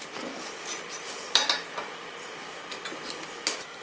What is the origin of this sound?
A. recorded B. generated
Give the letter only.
A